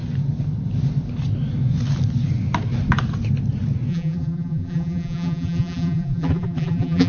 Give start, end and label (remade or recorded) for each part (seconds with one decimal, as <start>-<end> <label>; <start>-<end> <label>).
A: 0.0-3.9 recorded; 3.9-7.1 remade